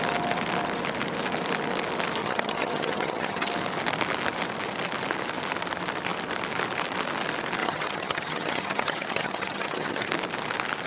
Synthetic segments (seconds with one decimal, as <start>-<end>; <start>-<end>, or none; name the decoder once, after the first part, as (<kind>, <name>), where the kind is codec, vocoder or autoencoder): 2.2-3.5 (vocoder, HiFi-GAN); 7.6-10.1